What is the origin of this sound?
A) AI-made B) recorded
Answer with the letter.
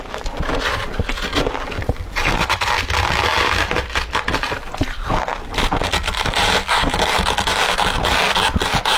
B